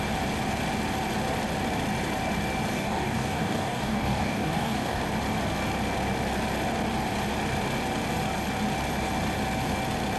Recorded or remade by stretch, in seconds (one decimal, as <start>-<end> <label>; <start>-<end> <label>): 0.0-2.7 recorded; 2.7-5.0 remade; 5.0-10.2 recorded